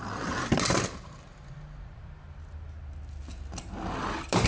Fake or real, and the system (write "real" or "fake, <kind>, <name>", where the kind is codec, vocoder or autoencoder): real